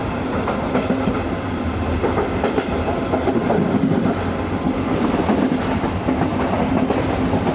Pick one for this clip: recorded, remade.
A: recorded